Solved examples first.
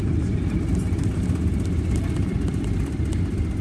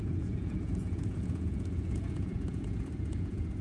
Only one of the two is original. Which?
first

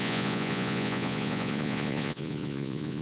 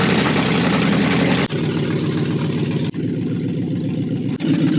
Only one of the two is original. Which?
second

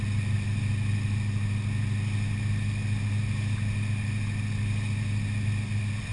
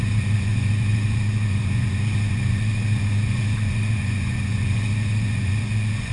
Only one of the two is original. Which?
first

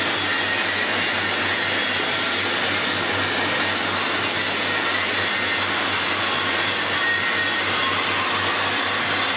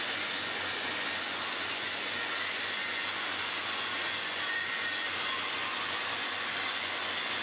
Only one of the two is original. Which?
first